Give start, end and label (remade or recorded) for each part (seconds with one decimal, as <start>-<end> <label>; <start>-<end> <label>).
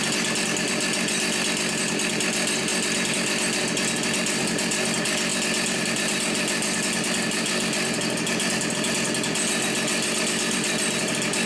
0.0-11.5 recorded